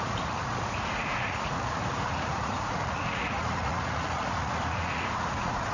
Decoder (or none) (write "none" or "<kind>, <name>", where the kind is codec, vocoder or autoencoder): vocoder, Vocos